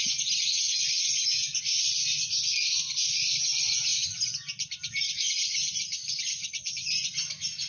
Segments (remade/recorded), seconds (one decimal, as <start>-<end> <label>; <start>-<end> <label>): 0.0-7.7 recorded